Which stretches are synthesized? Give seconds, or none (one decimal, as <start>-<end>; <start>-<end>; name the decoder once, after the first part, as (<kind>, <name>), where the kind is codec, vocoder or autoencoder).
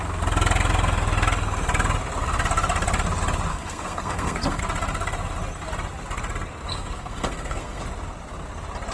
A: 3.5-4.6 (codec, SNAC); 6.7-7.8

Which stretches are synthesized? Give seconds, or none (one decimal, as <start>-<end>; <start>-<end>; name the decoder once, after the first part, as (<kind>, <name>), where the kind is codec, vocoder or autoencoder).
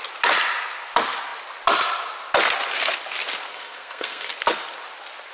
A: 3.5-4.3 (codec, SNAC)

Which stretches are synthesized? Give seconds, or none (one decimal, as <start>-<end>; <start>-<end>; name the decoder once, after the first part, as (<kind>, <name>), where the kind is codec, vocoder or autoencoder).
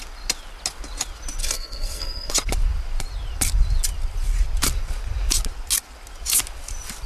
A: 1.4-2.3 (codec, SNAC)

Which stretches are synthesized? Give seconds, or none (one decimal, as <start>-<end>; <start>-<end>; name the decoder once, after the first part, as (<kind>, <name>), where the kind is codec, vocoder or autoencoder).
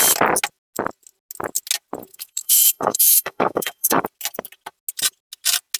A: 2.1-4.0 (codec, SNAC)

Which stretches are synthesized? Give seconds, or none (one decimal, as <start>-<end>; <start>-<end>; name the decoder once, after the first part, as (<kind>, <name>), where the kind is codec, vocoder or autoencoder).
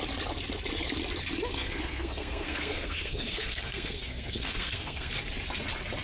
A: 1.5-5.1 (codec, SNAC)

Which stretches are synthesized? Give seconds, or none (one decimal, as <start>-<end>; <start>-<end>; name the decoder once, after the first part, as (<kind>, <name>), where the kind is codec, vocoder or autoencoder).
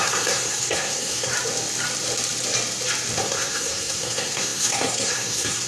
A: 0.0-1.3 (codec, SNAC); 3.2-5.7